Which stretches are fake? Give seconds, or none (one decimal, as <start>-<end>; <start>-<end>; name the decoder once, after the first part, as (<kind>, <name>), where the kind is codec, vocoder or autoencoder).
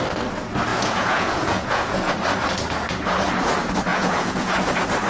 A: 0.7-2.1 (vocoder, Vocos); 3.9-4.6